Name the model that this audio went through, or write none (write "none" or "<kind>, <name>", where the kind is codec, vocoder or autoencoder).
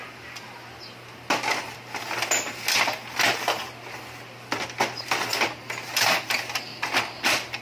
none